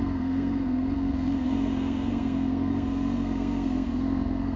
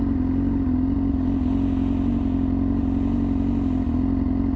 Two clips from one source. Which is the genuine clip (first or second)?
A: second